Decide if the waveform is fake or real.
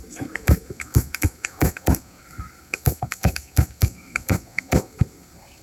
fake